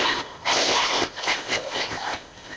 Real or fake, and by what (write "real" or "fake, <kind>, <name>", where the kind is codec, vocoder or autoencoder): fake, codec, ZipCodec